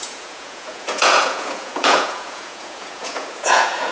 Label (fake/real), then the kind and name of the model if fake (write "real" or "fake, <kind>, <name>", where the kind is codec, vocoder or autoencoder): fake, vocoder, Vocos